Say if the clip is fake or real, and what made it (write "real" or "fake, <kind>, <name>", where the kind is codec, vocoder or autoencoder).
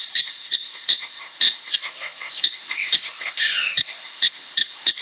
fake, codec, ZipCodec